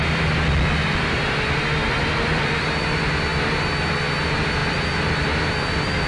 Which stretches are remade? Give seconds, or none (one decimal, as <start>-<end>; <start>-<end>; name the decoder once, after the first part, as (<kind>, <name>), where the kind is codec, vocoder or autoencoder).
1.8-2.6 (vocoder, BigVGAN v2)